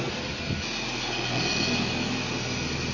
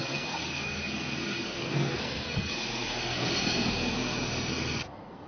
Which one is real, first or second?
first